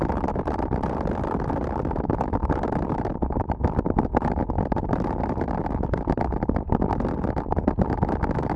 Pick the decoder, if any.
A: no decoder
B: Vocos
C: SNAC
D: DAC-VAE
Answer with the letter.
A